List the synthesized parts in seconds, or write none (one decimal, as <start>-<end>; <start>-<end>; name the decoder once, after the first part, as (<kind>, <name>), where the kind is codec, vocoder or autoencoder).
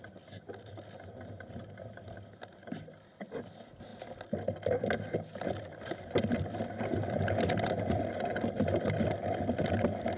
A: none